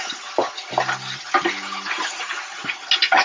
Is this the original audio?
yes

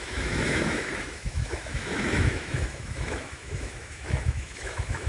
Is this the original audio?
no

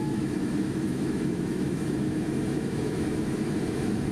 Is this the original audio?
no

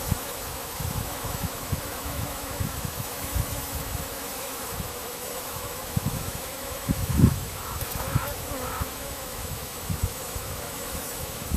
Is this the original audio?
no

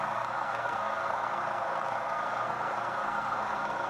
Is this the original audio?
no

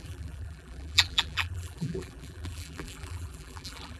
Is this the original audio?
no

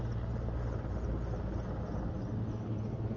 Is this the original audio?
yes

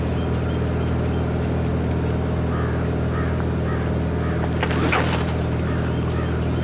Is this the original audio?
yes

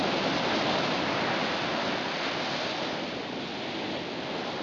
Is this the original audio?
yes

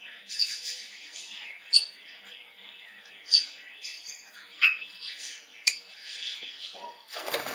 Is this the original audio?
no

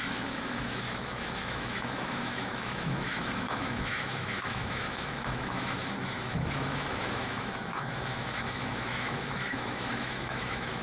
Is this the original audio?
no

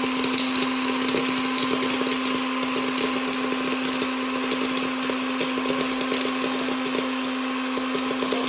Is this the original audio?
yes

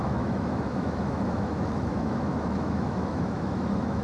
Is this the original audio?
no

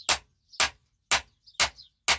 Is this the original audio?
yes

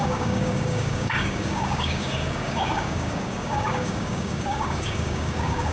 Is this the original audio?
no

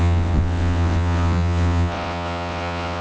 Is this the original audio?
no